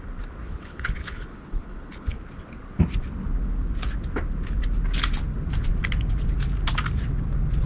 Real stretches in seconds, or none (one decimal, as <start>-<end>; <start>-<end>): 0.0-0.4; 2.2-7.7

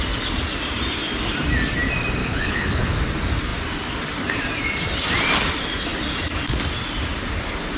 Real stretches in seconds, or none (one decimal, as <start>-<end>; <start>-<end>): 0.0-2.2; 3.0-7.8

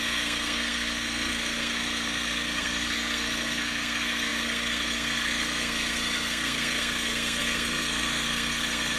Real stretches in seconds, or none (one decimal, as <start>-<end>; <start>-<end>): none

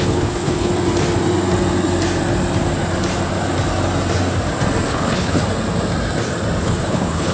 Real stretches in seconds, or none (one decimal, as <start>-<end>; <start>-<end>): 0.7-4.9; 5.4-6.6

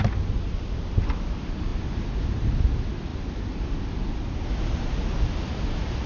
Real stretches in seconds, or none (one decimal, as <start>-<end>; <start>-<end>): 0.0-6.1

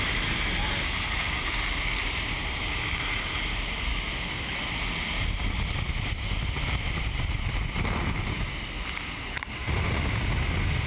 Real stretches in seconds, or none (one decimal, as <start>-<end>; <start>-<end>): 0.0-3.9; 4.5-10.9

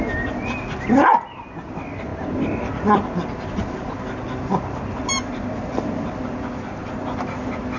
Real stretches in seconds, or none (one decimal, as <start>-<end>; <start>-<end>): 0.0-7.8